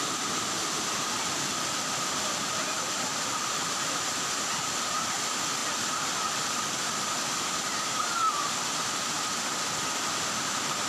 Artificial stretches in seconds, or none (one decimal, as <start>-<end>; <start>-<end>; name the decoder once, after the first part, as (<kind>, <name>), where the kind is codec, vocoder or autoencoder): 0.0-5.6 (vocoder, BigVGAN v2); 7.4-8.2; 10.2-10.9